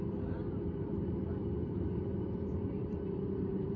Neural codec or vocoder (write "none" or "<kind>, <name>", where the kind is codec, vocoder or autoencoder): vocoder, BigVGAN v2